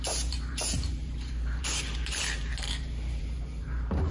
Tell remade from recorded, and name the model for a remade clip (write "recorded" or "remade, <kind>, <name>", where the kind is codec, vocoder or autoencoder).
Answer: remade, vocoder, BigVGAN v2